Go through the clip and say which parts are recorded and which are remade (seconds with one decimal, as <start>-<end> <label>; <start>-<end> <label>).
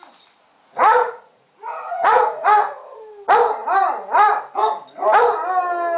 0.0-0.5 recorded; 0.5-3.0 remade; 3.0-6.0 recorded